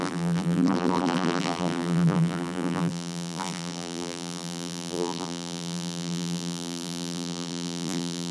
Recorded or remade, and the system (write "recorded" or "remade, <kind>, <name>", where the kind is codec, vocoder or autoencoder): remade, vocoder, BigVGAN v2